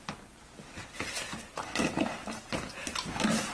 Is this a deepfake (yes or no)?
no